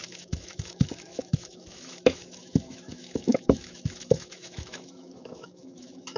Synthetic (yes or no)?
yes